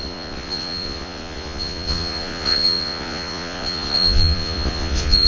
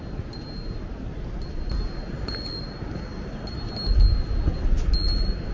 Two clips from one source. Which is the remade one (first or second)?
first